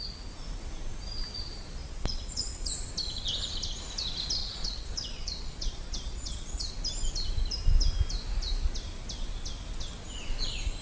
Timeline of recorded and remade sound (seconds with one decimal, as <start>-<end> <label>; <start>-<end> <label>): 0.0-1.8 recorded; 1.8-2.7 remade; 2.7-4.4 recorded; 4.4-6.7 remade; 6.7-10.8 recorded

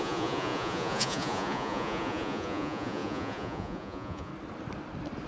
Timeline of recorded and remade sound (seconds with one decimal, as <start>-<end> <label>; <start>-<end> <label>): 0.0-4.3 remade; 4.3-5.3 recorded